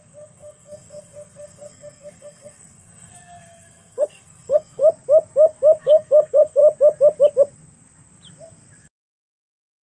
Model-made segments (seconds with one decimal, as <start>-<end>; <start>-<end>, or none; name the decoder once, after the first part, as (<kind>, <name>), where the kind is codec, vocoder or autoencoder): 0.0-4.8 (codec, SNAC); 5.8-6.6; 8.8-9.8